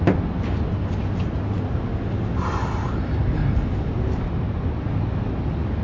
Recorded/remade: recorded